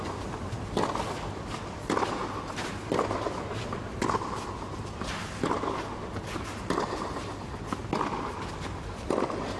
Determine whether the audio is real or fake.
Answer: real